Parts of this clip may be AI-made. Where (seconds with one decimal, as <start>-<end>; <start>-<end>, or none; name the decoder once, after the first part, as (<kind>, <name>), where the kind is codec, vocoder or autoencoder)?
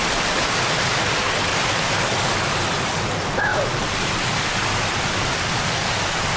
1.5-2.8 (vocoder, BigVGAN v2); 3.5-5.4